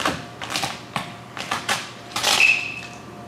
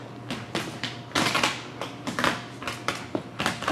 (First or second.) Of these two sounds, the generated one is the first